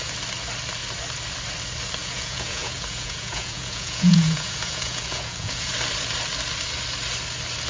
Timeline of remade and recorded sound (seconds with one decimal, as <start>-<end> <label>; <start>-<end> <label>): 0.0-2.0 recorded; 2.0-5.7 remade; 5.7-7.7 recorded